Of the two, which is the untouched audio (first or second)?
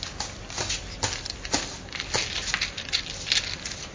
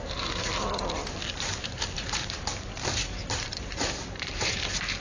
first